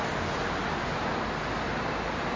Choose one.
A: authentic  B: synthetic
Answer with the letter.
A